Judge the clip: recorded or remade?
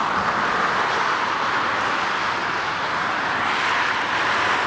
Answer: recorded